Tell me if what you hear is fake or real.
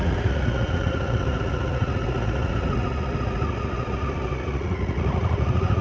fake